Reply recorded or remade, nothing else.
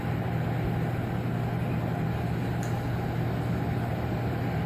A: recorded